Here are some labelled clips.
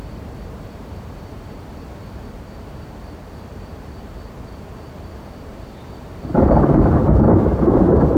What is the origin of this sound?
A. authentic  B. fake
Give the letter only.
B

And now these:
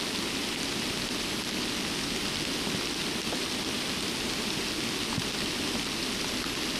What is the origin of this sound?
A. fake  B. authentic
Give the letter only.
B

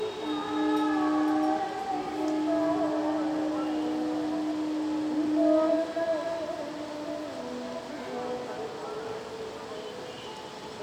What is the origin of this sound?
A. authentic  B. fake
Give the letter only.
A